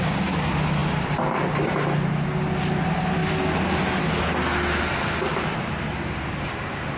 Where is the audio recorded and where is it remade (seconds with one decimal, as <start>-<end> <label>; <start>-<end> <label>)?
0.0-7.0 recorded